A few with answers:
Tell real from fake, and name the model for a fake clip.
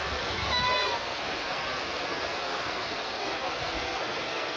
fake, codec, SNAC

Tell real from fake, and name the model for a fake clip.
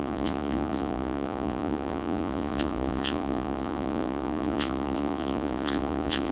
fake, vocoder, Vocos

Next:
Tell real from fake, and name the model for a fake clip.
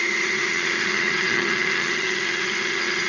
fake, vocoder, HiFi-GAN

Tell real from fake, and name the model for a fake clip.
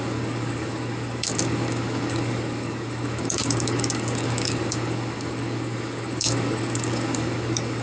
fake, codec, DAC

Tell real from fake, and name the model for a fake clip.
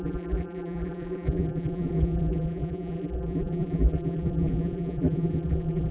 fake, vocoder, BigVGAN v2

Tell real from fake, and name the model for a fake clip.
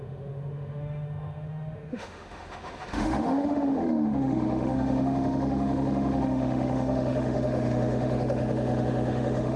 fake, autoencoder, DAC-VAE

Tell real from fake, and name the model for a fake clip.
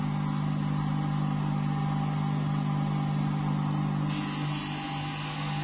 real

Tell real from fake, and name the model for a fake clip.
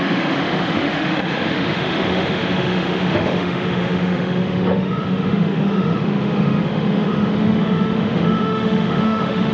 fake, autoencoder, DAC-VAE